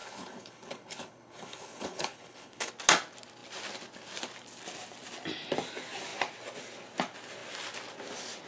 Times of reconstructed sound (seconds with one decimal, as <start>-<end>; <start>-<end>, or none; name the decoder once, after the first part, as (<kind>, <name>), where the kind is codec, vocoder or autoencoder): 0.0-2.7 (codec, HILCodec)